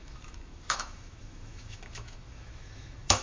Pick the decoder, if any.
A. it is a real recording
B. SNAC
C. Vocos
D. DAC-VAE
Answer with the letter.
D